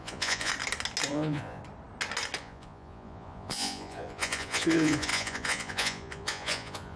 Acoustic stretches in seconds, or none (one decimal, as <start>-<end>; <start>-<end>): 0.5-1.1; 1.6-2.4